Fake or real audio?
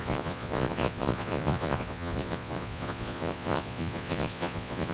fake